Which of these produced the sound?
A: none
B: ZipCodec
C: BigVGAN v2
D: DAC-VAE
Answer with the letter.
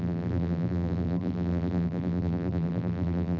C